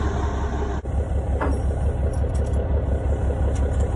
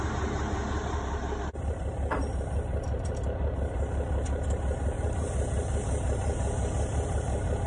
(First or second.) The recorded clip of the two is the first